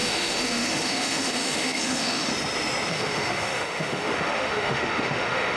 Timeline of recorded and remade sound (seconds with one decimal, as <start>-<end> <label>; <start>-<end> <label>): 0.0-2.3 remade; 2.3-2.9 recorded; 2.9-5.6 remade